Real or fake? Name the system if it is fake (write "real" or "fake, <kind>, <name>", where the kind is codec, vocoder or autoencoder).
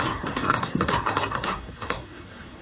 fake, codec, SNAC